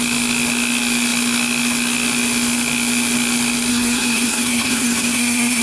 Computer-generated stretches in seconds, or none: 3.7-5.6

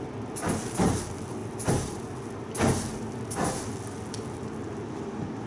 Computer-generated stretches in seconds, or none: 1.4-2.0; 2.9-3.5

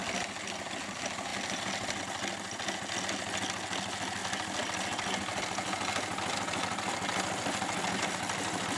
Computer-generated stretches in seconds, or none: none

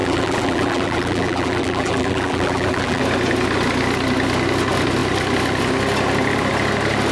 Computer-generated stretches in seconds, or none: 0.0-3.0

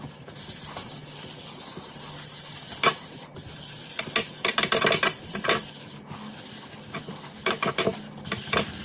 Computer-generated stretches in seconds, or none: none

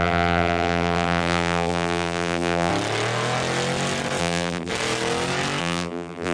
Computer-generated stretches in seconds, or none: 0.0-2.7; 4.2-4.7; 5.6-6.3

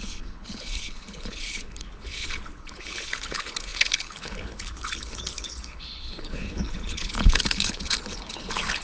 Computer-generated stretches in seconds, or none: 0.0-8.8